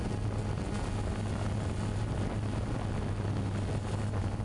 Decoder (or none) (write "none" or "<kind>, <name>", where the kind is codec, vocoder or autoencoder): none